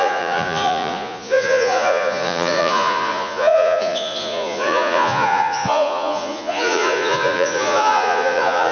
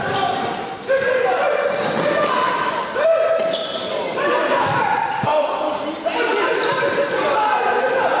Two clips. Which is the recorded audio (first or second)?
second